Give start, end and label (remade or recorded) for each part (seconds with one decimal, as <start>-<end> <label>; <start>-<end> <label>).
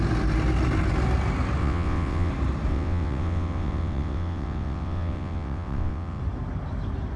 0.0-1.6 recorded; 1.6-2.3 remade; 2.3-2.7 recorded; 2.7-6.2 remade; 6.2-7.2 recorded